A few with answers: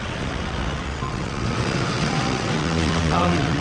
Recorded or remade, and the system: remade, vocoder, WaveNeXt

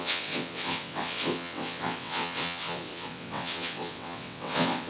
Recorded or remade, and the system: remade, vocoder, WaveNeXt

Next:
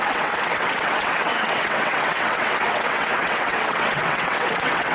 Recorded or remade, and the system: remade, vocoder, WaveNeXt